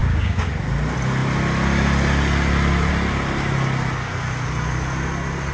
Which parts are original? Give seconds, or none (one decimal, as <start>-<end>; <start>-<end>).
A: 0.5-5.5